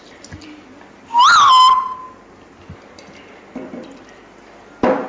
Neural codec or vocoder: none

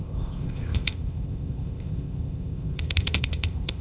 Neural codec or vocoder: codec, ZipCodec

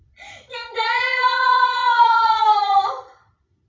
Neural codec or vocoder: vocoder, Vocos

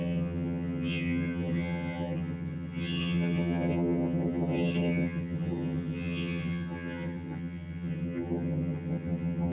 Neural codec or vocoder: vocoder, HiFi-GAN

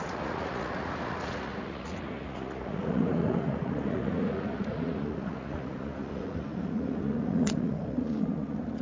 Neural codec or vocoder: vocoder, Vocos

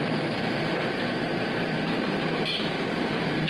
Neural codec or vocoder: none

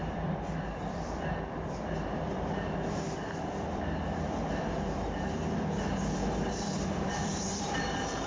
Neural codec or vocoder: vocoder, BigVGAN v2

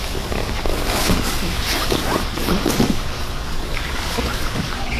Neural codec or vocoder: codec, DAC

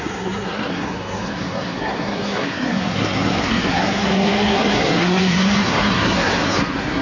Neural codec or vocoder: codec, SNAC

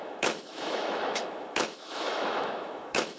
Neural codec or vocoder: autoencoder, DAC-VAE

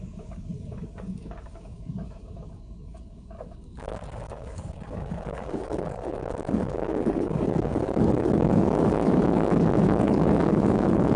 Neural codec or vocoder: codec, DAC